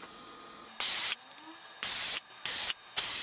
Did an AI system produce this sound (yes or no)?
no